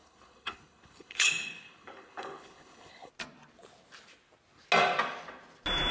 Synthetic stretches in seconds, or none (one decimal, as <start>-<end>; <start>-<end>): 0.0-3.1